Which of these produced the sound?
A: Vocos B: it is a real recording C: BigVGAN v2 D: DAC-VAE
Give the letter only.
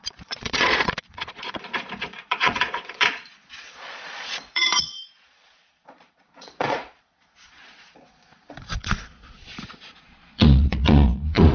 A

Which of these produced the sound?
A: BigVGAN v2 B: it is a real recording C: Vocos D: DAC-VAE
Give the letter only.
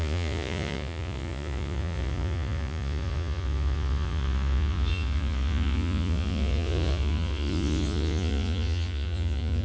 C